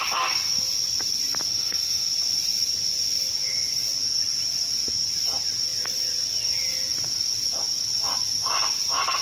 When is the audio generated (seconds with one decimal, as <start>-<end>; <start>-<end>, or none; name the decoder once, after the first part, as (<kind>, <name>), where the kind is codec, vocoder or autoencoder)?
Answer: 1.5-2.1 (autoencoder, DAC-VAE)